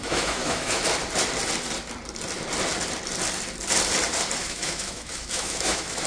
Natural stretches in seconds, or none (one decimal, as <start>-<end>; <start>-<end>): 0.8-4.4